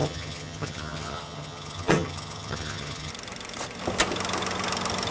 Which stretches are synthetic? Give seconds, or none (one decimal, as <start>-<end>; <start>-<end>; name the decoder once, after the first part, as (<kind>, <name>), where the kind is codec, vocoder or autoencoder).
0.0-3.1 (vocoder, HiFi-GAN)